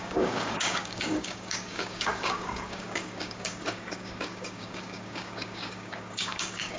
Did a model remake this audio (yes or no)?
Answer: yes